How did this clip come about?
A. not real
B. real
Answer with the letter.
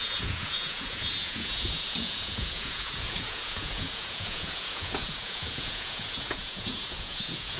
A